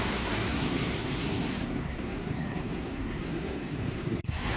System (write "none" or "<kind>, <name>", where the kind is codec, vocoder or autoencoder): codec, SNAC